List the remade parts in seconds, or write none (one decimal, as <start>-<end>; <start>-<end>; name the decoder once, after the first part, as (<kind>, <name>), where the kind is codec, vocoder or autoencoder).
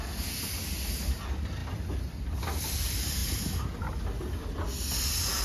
none